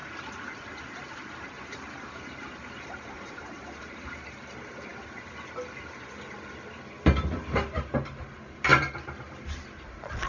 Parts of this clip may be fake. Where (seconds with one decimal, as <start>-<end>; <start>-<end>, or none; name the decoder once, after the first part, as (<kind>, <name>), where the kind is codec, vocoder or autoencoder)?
0.0-4.4 (vocoder, BigVGAN v2); 8.7-9.6